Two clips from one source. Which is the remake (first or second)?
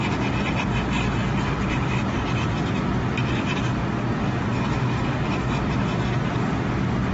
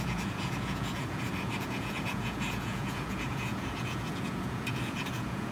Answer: second